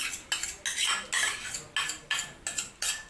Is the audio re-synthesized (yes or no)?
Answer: no